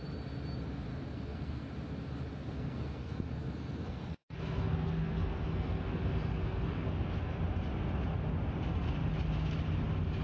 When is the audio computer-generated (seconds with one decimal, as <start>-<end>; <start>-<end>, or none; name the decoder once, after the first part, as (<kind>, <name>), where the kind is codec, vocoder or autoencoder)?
0.9-1.7 (codec, SNAC); 2.3-7.4